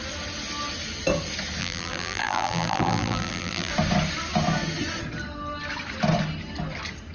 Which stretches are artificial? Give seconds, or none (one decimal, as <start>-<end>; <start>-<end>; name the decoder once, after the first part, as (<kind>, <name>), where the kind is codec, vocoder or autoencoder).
1.6-3.7 (vocoder, BigVGAN v2)

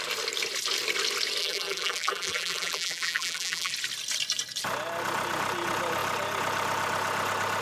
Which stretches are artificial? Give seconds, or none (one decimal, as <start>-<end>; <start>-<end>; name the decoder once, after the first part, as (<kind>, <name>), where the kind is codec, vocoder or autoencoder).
1.4-3.7 (vocoder, BigVGAN v2)

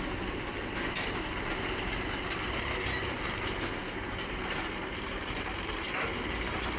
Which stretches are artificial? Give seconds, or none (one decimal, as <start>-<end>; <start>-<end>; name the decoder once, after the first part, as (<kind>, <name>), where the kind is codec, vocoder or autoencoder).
3.8-5.9 (vocoder, BigVGAN v2)

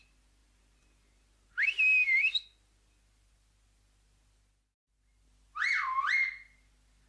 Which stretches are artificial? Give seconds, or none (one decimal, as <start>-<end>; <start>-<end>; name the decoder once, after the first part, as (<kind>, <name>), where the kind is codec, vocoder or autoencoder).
none

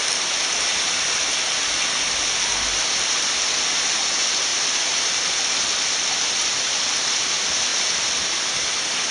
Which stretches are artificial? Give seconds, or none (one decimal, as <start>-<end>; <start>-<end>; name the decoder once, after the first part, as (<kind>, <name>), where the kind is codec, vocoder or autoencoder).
4.5-5.3 (vocoder, BigVGAN v2)